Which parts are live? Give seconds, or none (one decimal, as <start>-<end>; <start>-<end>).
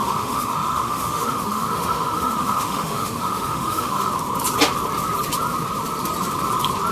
4.1-6.9